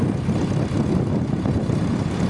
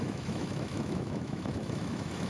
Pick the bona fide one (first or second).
first